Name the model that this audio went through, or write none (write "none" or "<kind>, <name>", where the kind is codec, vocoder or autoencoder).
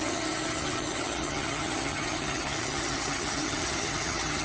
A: vocoder, HiFi-GAN